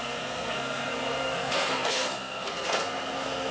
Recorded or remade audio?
remade